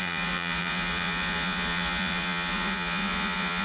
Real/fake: fake